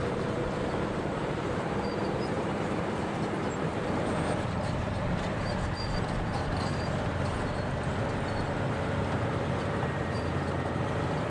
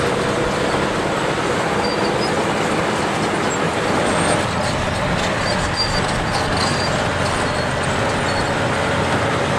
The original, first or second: second